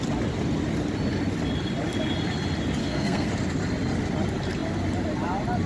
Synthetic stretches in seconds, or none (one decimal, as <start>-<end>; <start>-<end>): 2.8-3.3